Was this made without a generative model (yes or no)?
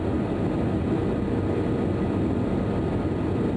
yes